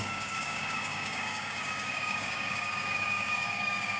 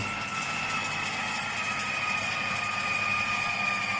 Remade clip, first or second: first